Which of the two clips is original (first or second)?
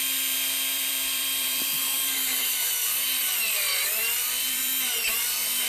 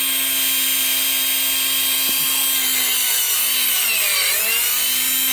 second